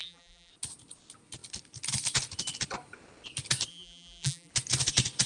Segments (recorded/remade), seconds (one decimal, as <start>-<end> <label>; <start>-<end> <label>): 0.0-0.5 remade; 0.5-3.7 recorded; 3.7-4.5 remade; 4.5-5.3 recorded